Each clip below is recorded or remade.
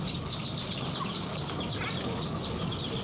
recorded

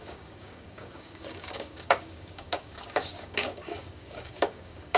remade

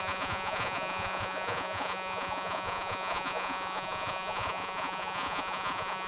remade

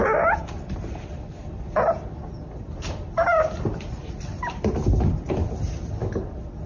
recorded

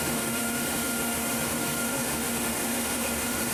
remade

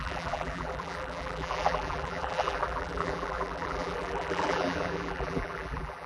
remade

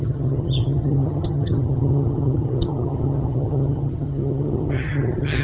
remade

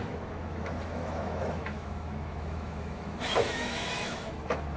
remade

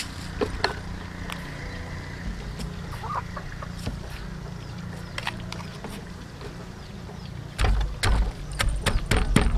recorded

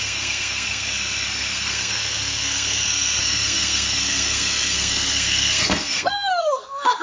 remade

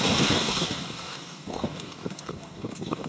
remade